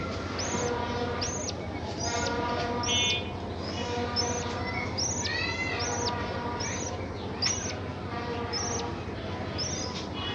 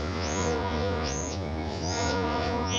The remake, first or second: second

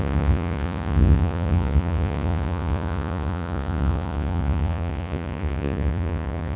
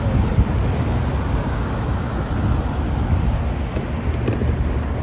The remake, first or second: first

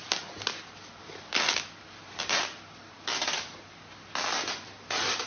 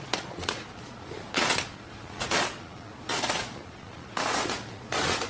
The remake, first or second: second